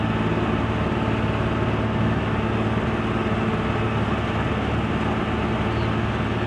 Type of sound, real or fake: real